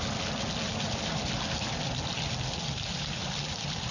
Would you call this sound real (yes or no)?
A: yes